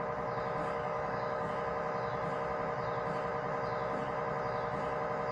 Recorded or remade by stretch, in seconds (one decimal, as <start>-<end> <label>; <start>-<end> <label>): 0.0-0.6 recorded; 0.6-1.5 remade; 1.5-5.3 recorded